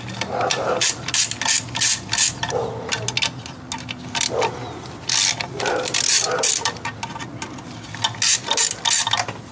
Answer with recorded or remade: recorded